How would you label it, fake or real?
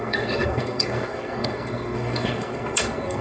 fake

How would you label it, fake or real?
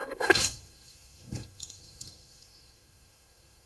fake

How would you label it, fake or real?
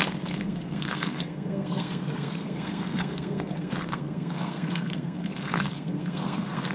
fake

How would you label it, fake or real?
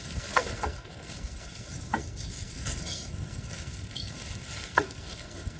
fake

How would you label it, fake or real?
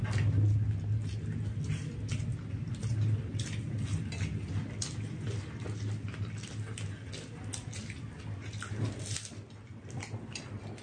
real